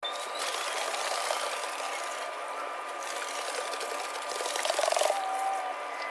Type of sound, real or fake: real